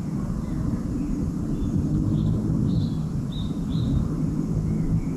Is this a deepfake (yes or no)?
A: no